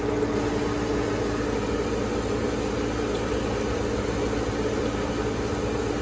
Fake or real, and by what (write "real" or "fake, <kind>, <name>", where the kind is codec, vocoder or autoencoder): real